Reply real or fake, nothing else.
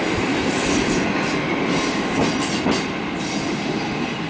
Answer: real